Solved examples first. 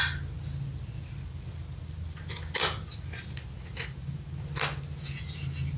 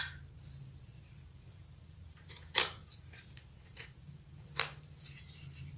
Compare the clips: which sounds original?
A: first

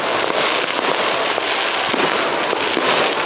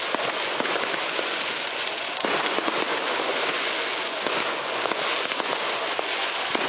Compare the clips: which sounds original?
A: first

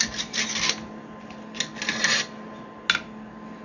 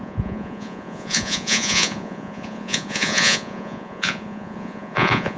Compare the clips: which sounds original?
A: first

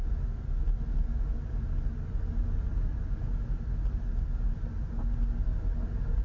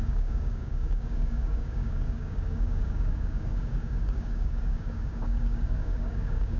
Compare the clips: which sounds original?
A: first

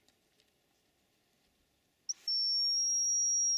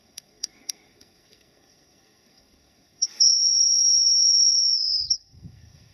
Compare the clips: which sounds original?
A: first